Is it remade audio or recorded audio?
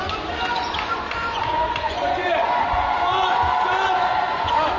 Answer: remade